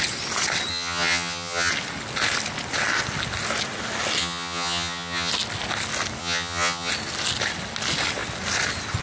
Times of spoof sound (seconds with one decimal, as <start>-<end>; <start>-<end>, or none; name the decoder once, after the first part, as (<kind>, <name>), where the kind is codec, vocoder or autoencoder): 0.7-1.7 (vocoder, HiFi-GAN); 4.2-5.3; 6.2-6.9